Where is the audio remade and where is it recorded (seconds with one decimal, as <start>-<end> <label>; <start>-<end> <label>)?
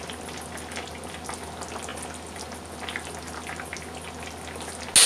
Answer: 0.0-5.1 recorded